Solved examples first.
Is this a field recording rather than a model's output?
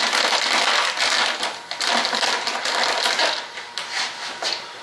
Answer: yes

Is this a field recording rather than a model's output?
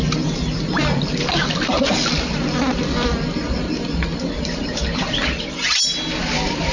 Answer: yes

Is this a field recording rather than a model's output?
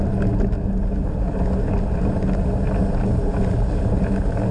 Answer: yes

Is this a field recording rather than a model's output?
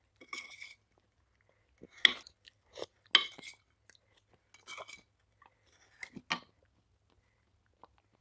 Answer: yes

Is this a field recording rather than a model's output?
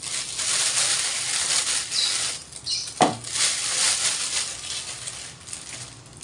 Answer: yes